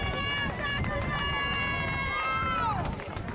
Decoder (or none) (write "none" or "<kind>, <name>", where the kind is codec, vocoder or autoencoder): none